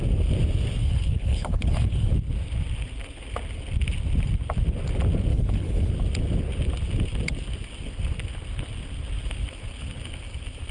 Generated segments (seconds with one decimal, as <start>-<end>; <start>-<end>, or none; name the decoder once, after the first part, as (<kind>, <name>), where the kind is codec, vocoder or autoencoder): 0.8-2.1 (codec, HILCodec); 5.3-5.9